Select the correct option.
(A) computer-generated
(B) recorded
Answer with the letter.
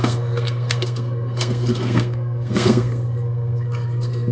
A